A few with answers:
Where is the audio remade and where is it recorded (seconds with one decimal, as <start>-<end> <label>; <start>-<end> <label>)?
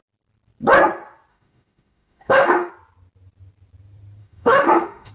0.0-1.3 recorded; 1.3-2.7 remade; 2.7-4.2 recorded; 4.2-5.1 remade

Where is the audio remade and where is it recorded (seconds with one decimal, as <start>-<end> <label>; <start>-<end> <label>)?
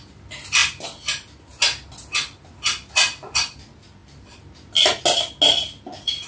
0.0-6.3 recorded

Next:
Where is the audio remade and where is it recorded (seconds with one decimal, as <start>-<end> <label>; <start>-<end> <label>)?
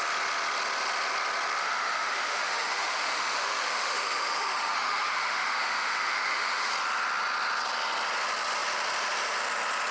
0.0-1.6 recorded; 1.6-6.7 remade; 6.7-9.9 recorded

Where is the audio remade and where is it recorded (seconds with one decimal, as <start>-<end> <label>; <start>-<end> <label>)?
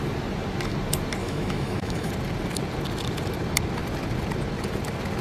0.0-1.2 recorded; 1.2-2.1 remade; 2.1-5.2 recorded